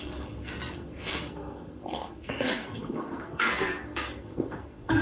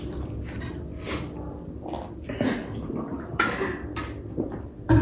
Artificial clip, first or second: first